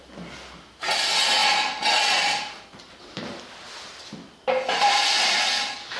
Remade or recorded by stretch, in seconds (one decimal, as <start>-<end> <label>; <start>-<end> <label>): 0.0-6.0 recorded